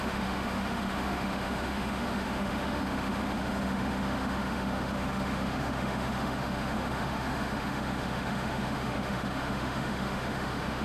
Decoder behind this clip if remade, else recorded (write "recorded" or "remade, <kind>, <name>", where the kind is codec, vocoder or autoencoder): remade, autoencoder, DAC-VAE